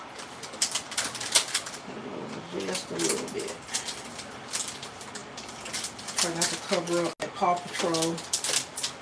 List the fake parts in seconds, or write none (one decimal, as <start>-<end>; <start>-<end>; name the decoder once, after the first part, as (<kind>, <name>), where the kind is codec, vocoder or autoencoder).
none